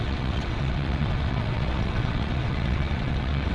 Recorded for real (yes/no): no